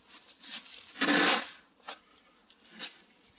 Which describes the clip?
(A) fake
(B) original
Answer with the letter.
B